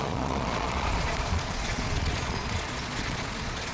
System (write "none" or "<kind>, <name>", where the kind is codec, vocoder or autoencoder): vocoder, Vocos